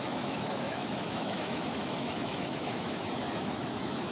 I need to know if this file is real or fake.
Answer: fake